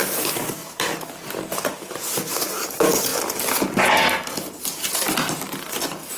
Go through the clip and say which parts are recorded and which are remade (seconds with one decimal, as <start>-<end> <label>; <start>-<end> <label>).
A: 0.0-0.6 recorded; 0.6-1.9 remade; 1.9-6.2 recorded